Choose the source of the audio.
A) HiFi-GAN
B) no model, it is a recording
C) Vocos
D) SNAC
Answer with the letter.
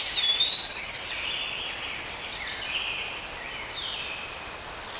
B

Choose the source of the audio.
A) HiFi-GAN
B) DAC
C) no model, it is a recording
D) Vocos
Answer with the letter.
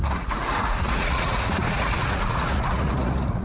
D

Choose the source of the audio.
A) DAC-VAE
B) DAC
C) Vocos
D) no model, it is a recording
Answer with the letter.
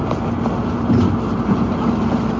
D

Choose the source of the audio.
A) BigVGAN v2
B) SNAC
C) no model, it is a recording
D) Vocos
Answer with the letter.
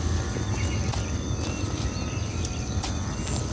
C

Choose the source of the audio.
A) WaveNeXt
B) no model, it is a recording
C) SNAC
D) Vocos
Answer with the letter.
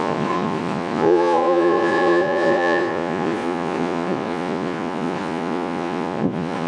D